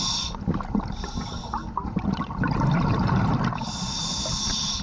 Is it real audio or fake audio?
real